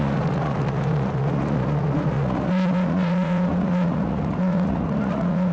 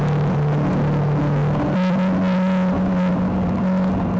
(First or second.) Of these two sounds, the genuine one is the second